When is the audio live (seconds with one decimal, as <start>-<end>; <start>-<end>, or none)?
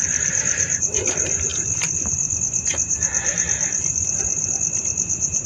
0.8-1.5; 2.4-5.5